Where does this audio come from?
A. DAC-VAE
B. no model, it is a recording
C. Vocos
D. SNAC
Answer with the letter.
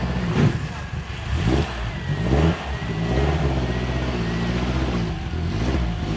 B